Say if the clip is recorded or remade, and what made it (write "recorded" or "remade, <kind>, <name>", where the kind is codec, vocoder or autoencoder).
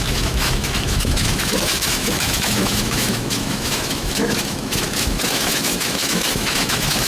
remade, autoencoder, DAC-VAE